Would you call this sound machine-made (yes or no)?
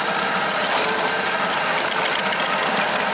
no